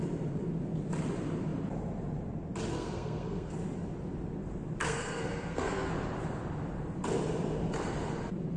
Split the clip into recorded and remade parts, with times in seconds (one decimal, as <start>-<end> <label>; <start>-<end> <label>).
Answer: 0.0-2.7 recorded; 2.7-3.5 remade; 3.5-4.8 recorded; 4.8-5.9 remade; 5.9-8.6 recorded